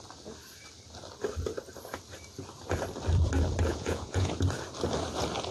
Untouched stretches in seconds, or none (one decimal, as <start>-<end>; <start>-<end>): 0.0-3.7; 4.3-5.5